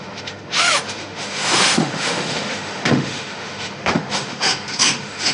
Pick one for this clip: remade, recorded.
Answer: remade